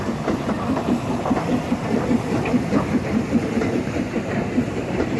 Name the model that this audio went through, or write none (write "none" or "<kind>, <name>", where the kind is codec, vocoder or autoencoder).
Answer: vocoder, BigVGAN v2